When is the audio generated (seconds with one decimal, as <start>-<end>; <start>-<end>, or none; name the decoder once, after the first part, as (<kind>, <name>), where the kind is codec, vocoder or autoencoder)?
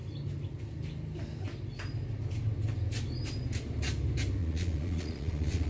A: 4.4-5.7 (vocoder, Vocos)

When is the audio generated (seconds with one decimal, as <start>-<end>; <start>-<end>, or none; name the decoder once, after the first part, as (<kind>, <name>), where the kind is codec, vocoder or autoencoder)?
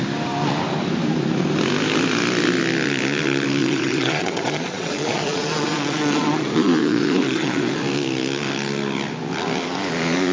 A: 3.6-7.8 (vocoder, Vocos)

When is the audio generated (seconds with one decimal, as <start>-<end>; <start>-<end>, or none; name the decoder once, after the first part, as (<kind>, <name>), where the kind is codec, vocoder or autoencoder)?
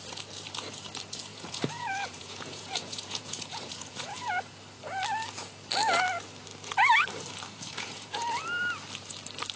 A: 1.3-4.3 (vocoder, Vocos); 7.5-8.4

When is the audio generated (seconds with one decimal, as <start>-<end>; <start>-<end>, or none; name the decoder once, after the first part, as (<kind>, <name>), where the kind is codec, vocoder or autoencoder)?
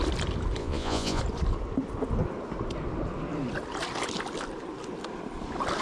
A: 0.6-1.2 (vocoder, Vocos)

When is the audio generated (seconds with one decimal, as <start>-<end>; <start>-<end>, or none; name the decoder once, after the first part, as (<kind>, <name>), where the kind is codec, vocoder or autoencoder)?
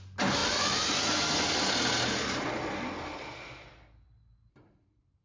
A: none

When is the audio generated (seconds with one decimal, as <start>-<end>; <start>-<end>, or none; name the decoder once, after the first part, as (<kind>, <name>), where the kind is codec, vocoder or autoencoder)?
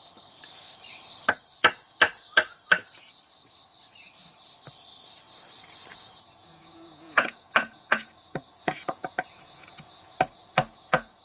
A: 5.9-11.2 (vocoder, Vocos)